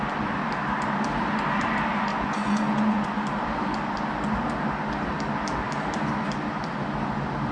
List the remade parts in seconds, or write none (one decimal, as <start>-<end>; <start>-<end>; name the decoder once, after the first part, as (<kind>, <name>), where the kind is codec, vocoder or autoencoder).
2.1-3.2 (vocoder, Vocos)